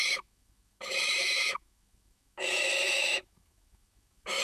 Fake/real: fake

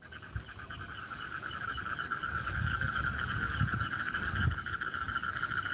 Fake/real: fake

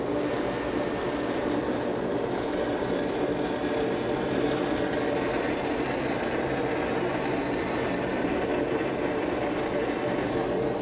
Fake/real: real